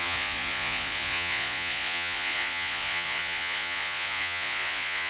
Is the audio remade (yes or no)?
yes